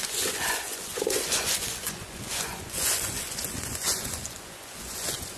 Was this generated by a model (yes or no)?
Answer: yes